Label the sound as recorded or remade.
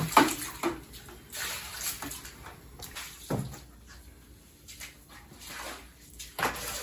recorded